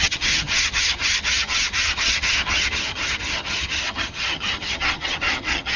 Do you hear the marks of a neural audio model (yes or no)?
yes